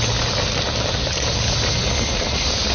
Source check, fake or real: real